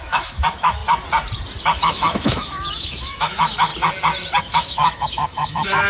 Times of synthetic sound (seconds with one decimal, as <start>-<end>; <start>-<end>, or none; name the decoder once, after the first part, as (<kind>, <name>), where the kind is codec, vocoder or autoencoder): 0.0-0.8 (autoencoder, DAC-VAE); 1.6-3.7; 4.4-5.9